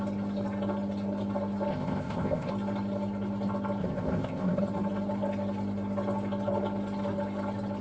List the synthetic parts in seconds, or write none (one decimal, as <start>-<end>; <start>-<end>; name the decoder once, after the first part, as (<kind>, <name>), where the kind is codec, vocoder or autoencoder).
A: 1.7-2.5 (codec, ZipCodec); 3.8-4.6